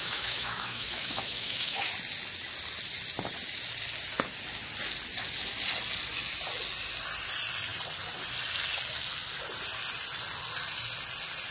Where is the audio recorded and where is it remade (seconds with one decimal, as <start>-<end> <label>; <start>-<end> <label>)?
0.0-1.9 remade; 1.9-11.5 recorded